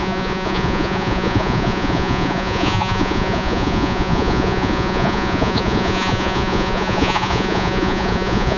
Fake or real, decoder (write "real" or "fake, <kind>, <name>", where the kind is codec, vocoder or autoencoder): fake, vocoder, Vocos